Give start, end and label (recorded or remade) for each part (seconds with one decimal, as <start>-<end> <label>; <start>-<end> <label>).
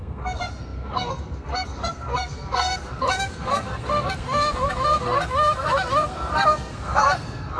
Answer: 0.0-7.6 remade